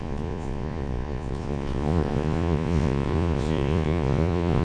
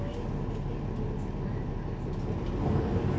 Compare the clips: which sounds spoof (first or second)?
first